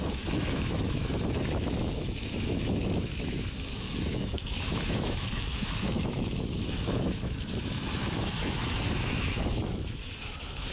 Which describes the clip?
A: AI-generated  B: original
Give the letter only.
A